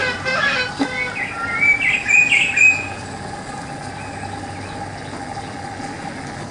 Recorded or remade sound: recorded